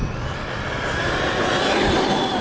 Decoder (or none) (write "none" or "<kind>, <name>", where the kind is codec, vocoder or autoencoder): vocoder, BigVGAN v2